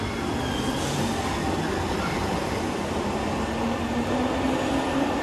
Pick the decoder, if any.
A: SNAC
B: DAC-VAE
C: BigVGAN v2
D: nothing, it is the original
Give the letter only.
D